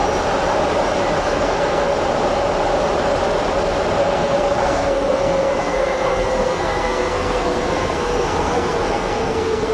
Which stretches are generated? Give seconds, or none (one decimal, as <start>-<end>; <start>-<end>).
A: 1.2-1.9; 4.0-9.7